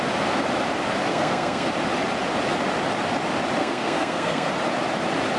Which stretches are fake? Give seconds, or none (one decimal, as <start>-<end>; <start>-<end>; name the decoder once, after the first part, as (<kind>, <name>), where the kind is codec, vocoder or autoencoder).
1.1-1.7 (codec, SNAC); 3.6-4.5